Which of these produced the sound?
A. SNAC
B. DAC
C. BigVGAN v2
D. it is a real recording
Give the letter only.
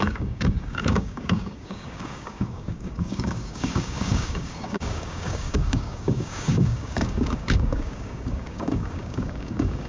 B